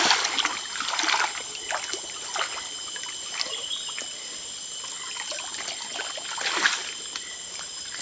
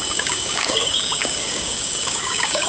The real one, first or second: first